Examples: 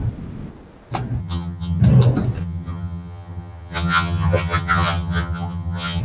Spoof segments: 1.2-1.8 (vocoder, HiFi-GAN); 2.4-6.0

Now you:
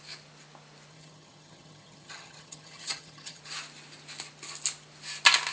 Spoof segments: 0.9-3.4 (vocoder, HiFi-GAN)

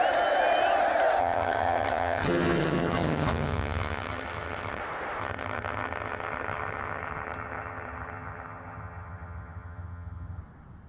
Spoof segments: 1.2-4.8 (vocoder, HiFi-GAN); 5.2-10.4

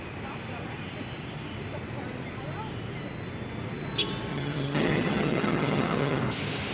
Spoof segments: 4.3-6.2 (vocoder, HiFi-GAN)

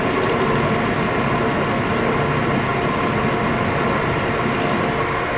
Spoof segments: none